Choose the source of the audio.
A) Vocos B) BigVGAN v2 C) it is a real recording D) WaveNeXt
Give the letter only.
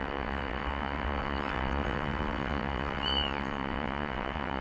D